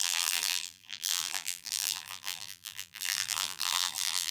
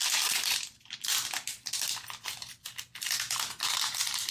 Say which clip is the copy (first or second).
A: first